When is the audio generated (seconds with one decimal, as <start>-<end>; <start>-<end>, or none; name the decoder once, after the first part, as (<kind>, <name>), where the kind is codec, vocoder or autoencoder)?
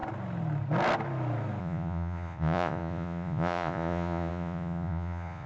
1.6-5.5 (vocoder, Vocos)